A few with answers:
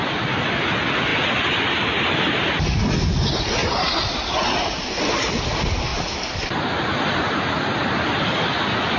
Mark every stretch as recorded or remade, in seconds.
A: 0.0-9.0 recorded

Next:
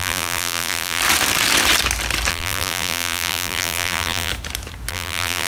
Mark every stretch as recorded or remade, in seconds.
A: 0.0-1.0 remade; 1.0-2.3 recorded; 2.3-4.3 remade; 4.3-4.9 recorded; 4.9-5.5 remade

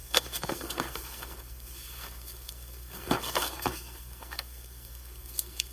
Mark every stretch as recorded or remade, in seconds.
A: 0.0-5.7 remade

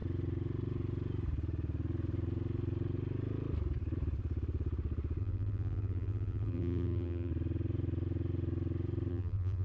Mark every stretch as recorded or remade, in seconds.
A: 0.0-5.2 recorded; 5.2-7.3 remade; 7.3-9.1 recorded; 9.1-9.6 remade

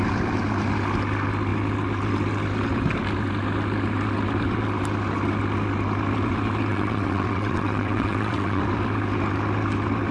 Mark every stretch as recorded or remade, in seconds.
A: 0.0-6.7 recorded; 6.7-8.6 remade; 8.6-10.1 recorded

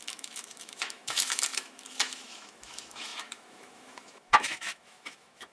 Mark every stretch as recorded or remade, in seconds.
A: 0.0-5.5 remade

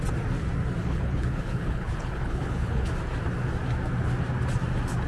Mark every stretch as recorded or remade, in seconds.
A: 0.0-0.8 recorded; 0.8-2.9 remade; 2.9-5.1 recorded

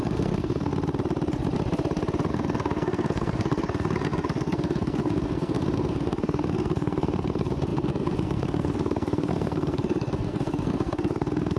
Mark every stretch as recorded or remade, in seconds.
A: 0.0-0.7 remade; 0.7-2.3 recorded; 2.3-11.6 remade